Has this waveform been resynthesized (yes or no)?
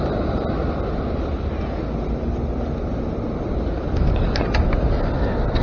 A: no